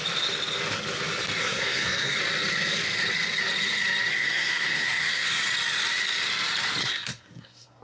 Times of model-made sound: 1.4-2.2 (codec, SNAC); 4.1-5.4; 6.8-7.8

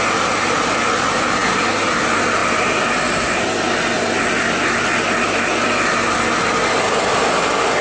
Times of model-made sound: none

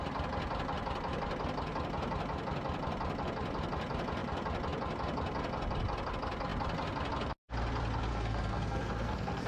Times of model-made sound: 8.1-9.5 (codec, SNAC)

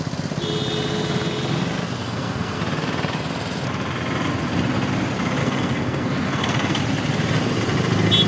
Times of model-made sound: 2.0-2.6 (codec, SNAC); 5.4-6.8

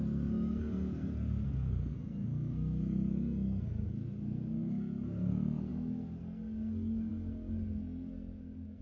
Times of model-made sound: 0.0-8.8 (codec, SNAC)